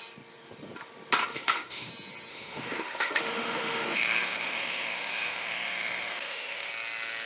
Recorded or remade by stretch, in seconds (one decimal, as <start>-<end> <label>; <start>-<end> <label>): 0.0-1.2 recorded; 1.2-1.9 remade; 1.9-2.3 recorded; 2.3-6.7 remade; 6.7-7.3 recorded